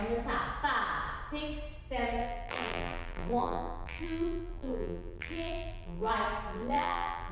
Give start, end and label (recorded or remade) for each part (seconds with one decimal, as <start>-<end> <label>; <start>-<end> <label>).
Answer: 0.0-2.2 recorded; 2.2-6.1 remade; 6.1-6.5 recorded; 6.5-7.3 remade

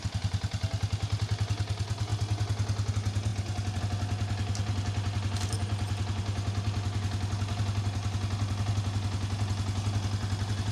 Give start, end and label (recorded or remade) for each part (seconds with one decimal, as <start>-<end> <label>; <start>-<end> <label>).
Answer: 0.0-10.7 recorded